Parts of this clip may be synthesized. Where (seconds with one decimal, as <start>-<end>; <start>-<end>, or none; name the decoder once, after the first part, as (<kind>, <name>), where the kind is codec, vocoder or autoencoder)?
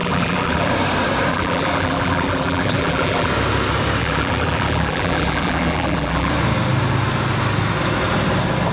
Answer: 0.0-0.7 (vocoder, BigVGAN v2); 1.3-3.3; 4.0-6.3